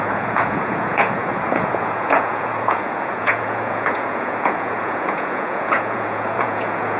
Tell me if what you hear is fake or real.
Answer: fake